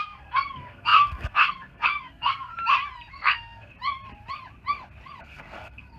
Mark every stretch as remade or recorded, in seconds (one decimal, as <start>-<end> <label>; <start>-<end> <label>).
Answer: 0.0-2.5 remade; 2.5-3.1 recorded; 3.1-3.7 remade; 3.7-5.2 recorded; 5.2-6.0 remade